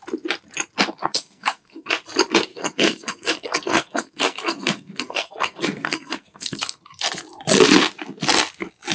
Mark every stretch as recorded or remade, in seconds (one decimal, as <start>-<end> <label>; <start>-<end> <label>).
0.0-1.0 recorded; 1.0-1.9 remade; 1.9-2.5 recorded; 2.5-6.8 remade; 6.8-8.9 recorded